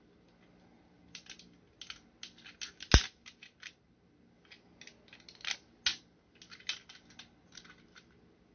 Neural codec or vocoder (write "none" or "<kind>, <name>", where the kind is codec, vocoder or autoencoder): none